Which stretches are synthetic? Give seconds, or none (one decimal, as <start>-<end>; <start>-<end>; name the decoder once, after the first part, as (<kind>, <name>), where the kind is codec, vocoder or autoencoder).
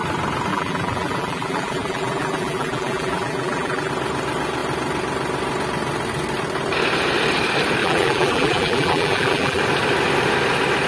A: 0.5-3.9 (vocoder, BigVGAN v2); 7.8-9.6